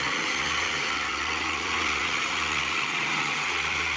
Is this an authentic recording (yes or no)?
no